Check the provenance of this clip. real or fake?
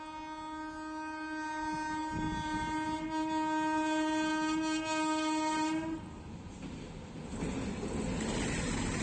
real